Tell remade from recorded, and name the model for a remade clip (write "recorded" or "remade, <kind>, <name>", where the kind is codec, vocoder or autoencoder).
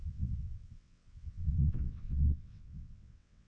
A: remade, vocoder, WaveNeXt